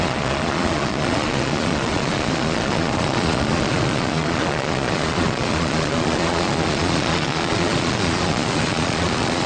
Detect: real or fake fake